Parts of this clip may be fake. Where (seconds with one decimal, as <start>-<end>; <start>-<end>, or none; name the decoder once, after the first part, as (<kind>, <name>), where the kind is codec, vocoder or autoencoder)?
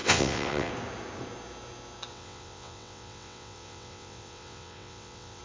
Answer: 0.0-0.7 (vocoder, WaveNeXt); 2.1-5.4